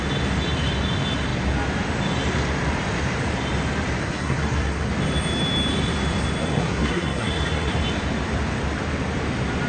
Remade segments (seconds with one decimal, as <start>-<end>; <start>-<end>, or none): 4.0-4.9; 6.4-7.8